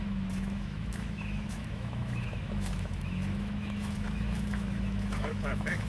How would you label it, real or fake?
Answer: fake